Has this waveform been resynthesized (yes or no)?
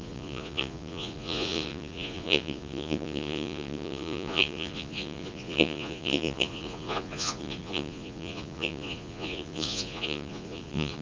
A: yes